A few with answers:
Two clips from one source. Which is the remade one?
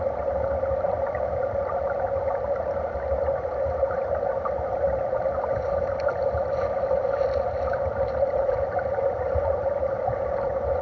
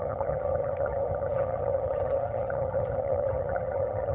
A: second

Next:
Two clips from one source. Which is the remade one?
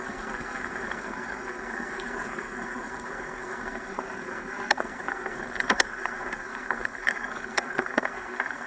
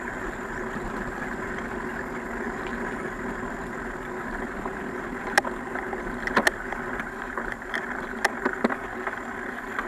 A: first